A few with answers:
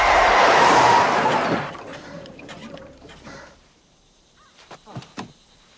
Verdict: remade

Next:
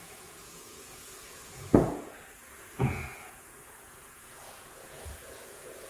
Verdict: remade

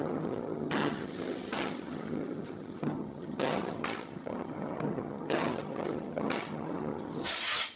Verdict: remade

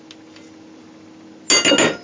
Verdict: recorded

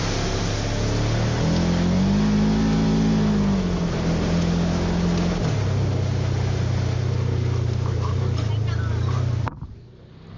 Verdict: recorded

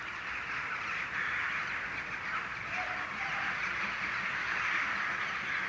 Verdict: recorded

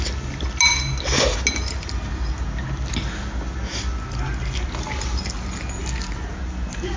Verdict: recorded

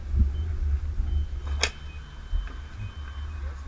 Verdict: recorded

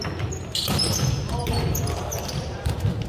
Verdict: recorded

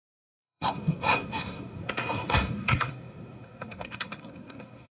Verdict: remade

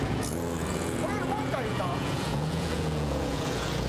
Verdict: remade